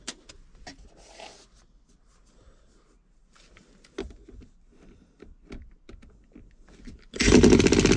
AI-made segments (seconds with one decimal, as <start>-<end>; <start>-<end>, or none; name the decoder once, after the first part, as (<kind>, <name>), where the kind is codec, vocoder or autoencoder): 4.7-8.0 (vocoder, BigVGAN v2)